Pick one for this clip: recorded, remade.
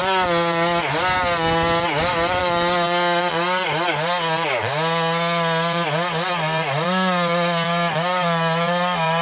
recorded